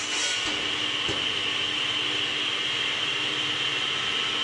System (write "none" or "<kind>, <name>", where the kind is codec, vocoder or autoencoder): none